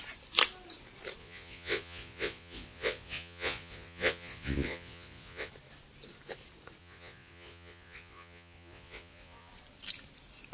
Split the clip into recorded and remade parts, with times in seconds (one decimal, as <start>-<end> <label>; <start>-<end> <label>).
0.0-1.2 recorded; 1.2-5.5 remade; 5.5-6.8 recorded; 6.8-9.5 remade; 9.5-10.5 recorded